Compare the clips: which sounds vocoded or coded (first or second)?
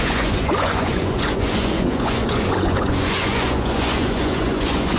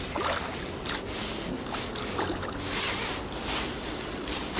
first